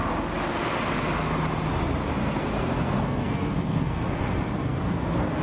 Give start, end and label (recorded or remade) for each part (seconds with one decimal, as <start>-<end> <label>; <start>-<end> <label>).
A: 0.0-2.2 recorded; 2.2-5.4 remade